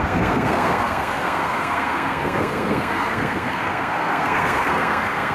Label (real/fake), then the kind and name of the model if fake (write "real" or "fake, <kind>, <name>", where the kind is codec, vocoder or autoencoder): fake, codec, SNAC